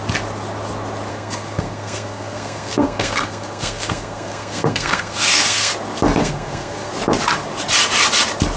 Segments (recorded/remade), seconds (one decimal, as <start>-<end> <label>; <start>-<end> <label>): 0.0-1.1 recorded; 1.1-5.7 remade; 5.7-6.2 recorded; 6.2-6.9 remade; 6.9-8.6 recorded